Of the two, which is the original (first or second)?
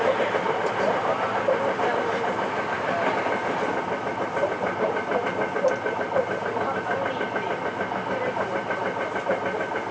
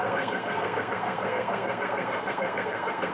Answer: first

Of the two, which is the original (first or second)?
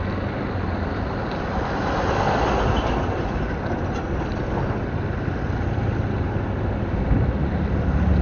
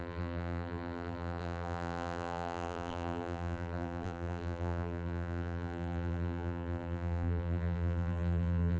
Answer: first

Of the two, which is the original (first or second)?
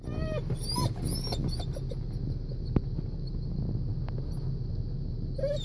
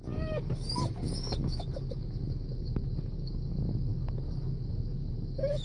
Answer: first